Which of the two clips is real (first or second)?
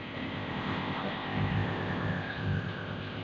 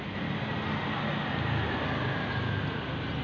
second